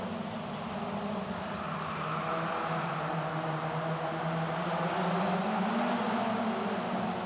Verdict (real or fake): real